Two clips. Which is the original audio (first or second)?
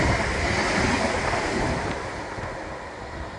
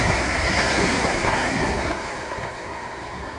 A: first